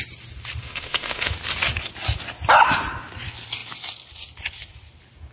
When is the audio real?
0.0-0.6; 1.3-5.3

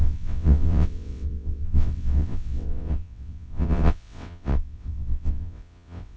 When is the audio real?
none

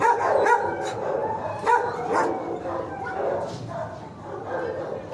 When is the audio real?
0.0-5.1

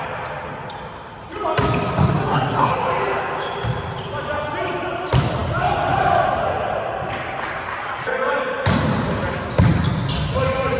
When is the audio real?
0.0-2.2; 2.7-10.8

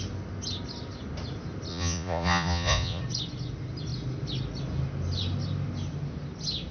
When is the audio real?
0.0-1.7; 3.0-6.7

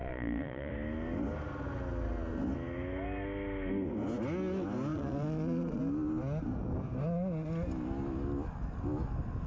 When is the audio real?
0.7-4.9; 5.8-9.5

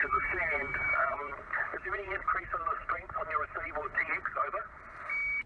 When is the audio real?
0.0-0.7; 2.1-2.8; 4.2-5.5